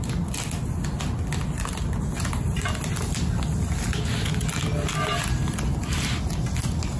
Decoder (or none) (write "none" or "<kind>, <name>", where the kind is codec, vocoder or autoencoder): none